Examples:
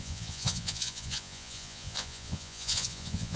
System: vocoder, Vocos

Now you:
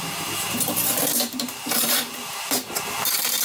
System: vocoder, BigVGAN v2